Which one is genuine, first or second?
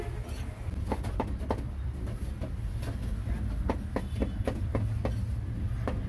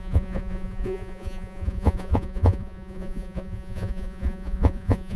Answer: first